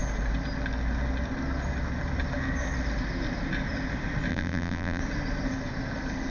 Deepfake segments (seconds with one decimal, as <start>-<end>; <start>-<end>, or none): 4.3-5.0